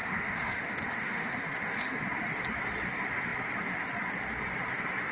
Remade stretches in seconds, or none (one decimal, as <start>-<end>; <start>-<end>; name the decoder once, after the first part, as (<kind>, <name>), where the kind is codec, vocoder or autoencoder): 0.0-2.0 (autoencoder, DAC-VAE)